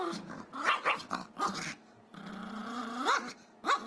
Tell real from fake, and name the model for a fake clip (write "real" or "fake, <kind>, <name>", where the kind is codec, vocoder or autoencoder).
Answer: real